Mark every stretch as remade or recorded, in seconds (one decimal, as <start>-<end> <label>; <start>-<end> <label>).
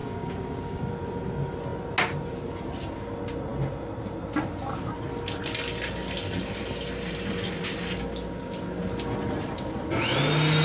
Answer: 0.0-0.9 remade; 0.9-10.6 recorded